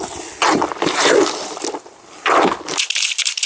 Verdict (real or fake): real